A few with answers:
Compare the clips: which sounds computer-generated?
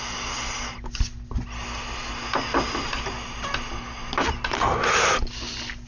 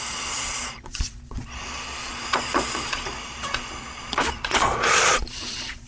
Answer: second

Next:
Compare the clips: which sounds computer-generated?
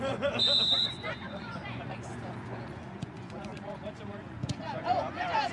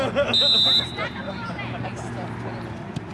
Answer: first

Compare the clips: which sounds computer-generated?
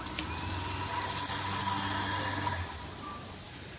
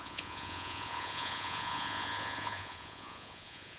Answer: second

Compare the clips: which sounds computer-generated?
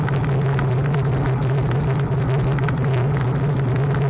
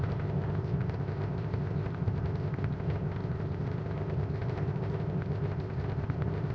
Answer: second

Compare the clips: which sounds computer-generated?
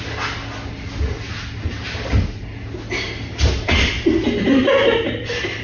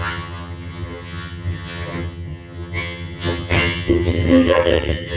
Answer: second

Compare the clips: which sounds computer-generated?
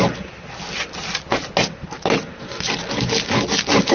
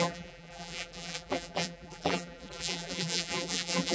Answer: second